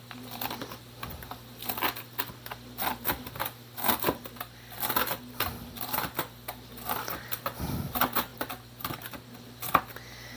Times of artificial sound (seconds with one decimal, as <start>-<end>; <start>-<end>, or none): none